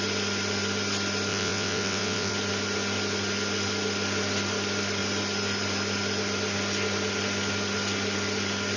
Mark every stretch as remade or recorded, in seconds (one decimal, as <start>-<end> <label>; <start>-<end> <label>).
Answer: 0.0-1.3 recorded; 1.3-2.3 remade; 2.3-8.8 recorded